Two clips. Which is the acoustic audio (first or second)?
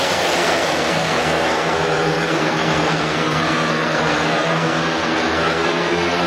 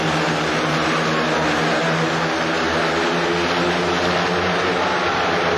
second